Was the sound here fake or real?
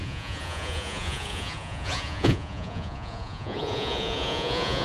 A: fake